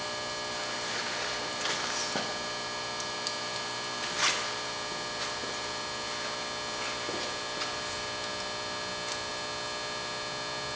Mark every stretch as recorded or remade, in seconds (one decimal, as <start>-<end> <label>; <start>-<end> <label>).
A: 0.0-10.8 recorded